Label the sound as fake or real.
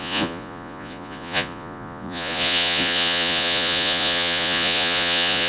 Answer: fake